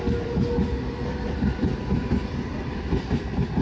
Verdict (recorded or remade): recorded